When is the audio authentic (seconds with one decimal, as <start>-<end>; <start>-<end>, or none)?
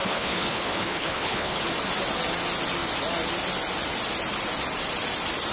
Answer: 1.6-5.5